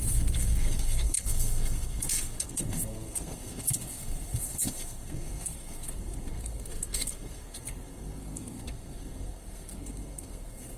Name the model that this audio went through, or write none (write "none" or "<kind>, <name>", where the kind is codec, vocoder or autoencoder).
codec, SNAC